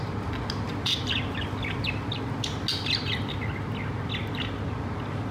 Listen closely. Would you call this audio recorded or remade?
recorded